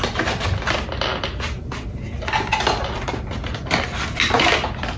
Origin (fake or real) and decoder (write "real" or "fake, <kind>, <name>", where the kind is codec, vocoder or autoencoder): real